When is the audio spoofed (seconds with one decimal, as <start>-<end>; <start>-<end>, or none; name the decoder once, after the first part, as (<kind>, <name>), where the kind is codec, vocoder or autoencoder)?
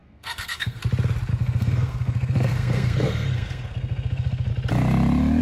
0.0-0.8 (codec, SNAC); 1.3-4.5